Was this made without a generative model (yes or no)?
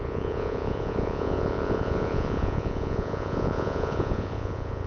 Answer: no